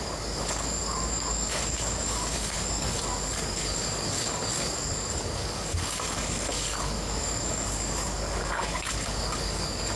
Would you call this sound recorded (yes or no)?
no